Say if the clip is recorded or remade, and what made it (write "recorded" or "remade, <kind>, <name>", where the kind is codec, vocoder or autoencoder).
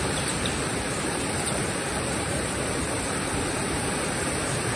remade, vocoder, BigVGAN v2